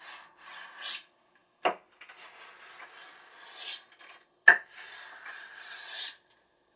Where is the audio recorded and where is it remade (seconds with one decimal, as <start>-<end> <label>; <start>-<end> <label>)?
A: 0.0-6.8 recorded